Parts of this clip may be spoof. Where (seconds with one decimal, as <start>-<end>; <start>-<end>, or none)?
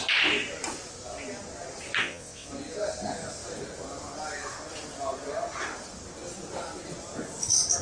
2.0-2.5